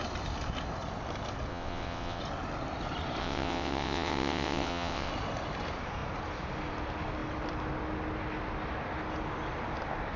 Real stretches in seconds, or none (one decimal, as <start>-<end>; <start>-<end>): 0.0-1.5; 2.2-3.2; 5.1-10.2